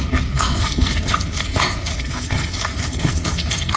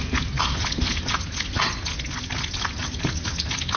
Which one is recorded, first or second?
second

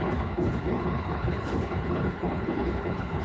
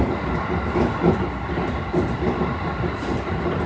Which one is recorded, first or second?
second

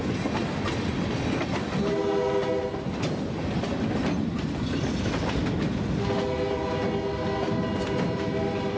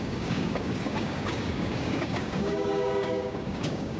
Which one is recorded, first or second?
first